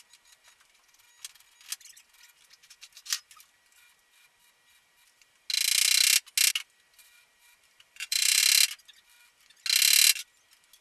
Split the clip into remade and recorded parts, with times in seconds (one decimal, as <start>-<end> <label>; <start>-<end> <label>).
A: 0.0-7.0 recorded; 7.0-8.4 remade; 8.4-10.8 recorded